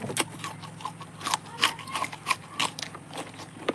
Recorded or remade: recorded